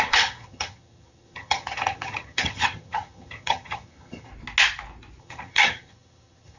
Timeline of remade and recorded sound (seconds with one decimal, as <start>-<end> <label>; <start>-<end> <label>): 0.0-4.3 remade; 4.3-5.2 recorded; 5.2-6.6 remade